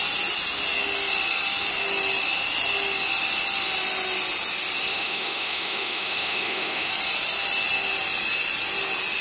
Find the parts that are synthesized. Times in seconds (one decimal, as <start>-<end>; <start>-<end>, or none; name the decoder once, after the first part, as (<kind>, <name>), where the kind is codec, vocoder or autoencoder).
4.9-6.9 (autoencoder, DAC-VAE)